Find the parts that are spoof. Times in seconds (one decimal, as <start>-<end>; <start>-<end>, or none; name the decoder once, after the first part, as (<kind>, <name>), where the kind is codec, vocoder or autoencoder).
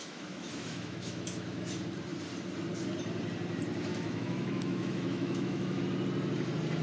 0.0-1.6 (autoencoder, DAC-VAE); 3.9-5.8